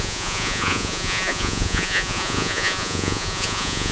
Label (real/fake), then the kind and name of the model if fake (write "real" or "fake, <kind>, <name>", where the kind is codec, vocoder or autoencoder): fake, vocoder, Vocos